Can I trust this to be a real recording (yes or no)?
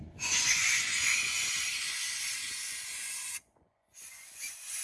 no